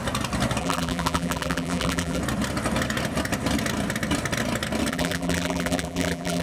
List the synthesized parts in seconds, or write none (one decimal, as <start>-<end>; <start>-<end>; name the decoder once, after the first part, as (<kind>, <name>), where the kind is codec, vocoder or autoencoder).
0.6-2.2 (vocoder, BigVGAN v2); 4.9-6.4